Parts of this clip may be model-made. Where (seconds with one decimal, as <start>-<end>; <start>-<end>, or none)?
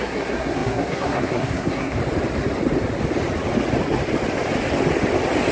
0.0-2.0